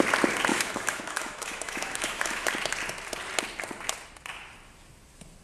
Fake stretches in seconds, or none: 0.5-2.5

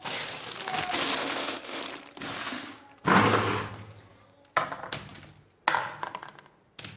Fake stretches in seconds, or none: 1.2-1.8

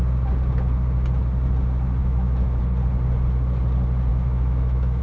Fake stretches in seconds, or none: 2.0-2.6; 4.1-5.0